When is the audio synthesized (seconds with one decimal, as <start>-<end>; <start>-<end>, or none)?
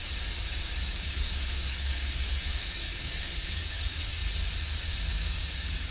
0.8-4.2; 5.1-5.9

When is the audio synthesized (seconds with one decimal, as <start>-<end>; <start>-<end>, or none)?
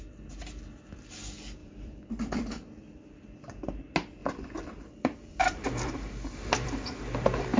1.6-3.8; 4.2-7.6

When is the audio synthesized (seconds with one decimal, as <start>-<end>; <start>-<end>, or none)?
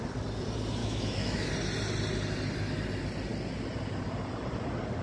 0.8-1.5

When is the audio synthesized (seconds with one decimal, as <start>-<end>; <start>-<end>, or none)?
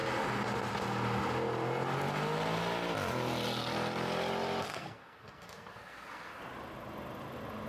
4.7-6.4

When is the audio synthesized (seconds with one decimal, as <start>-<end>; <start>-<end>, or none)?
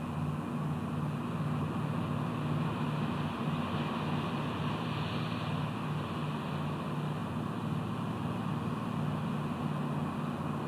none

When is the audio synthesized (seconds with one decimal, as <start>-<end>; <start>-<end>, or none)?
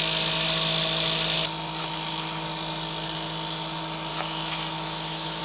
4.1-5.4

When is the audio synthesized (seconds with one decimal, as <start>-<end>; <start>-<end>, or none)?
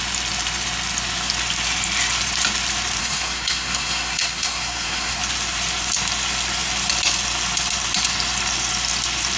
3.0-5.2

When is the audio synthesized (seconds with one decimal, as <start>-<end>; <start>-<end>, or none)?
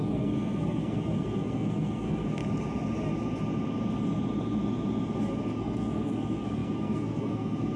0.0-2.4; 5.5-7.8